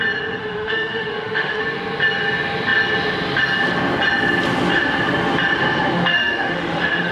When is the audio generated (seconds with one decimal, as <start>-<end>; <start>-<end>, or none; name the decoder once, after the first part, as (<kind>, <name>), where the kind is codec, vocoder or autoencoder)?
0.4-1.6 (autoencoder, DAC-VAE); 6.1-7.1